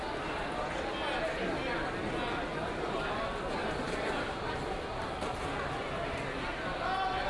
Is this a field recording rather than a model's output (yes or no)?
yes